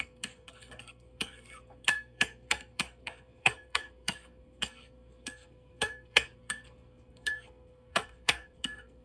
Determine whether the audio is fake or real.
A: fake